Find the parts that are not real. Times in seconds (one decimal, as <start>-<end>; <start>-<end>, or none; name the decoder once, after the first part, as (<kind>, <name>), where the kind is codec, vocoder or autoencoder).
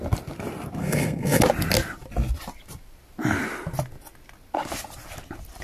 0.8-1.4 (codec, SNAC)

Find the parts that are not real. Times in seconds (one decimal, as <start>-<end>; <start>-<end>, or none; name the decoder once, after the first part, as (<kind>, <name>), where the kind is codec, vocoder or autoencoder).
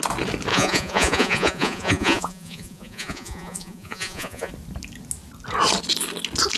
0.5-4.5 (vocoder, Vocos)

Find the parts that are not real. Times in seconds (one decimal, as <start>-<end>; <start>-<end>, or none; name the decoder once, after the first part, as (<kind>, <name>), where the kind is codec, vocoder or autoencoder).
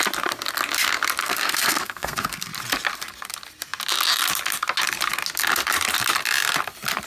1.2-2.5 (codec, SNAC)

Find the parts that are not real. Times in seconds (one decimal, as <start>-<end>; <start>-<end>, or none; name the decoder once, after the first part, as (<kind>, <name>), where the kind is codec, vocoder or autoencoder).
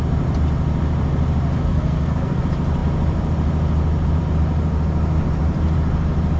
1.7-2.4 (codec, SNAC)